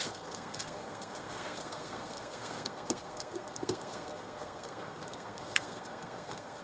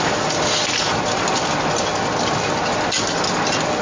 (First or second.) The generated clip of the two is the first